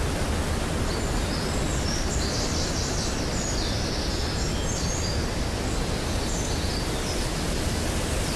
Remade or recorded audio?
recorded